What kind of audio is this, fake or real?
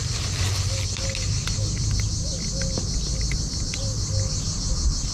real